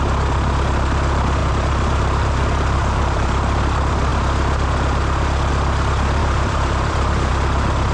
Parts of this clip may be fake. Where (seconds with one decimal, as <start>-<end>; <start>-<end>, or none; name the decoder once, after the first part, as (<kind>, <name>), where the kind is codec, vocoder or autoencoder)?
1.4-3.6 (vocoder, BigVGAN v2); 6.2-7.3